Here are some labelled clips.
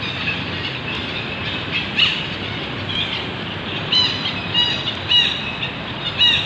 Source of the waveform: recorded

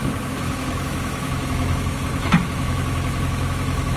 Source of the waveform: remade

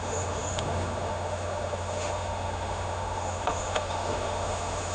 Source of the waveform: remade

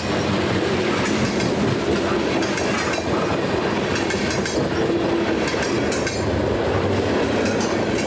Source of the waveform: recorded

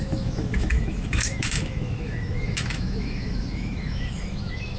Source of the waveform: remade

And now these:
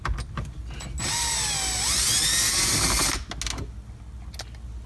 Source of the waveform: recorded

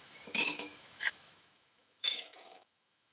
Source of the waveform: remade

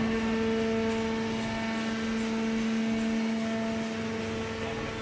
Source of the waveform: recorded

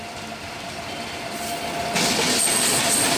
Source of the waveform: recorded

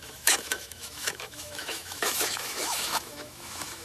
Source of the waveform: remade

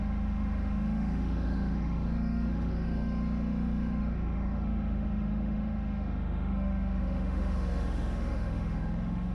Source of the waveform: remade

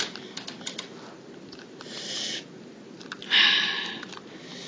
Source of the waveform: recorded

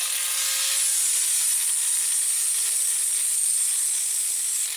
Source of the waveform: recorded